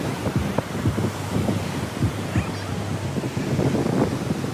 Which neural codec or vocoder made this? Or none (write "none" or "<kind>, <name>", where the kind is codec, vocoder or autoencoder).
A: none